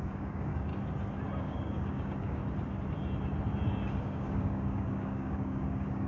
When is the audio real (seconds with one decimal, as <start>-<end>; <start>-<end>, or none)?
0.7-1.4; 2.4-4.0